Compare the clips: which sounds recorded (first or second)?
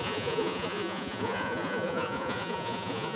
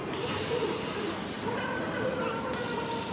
second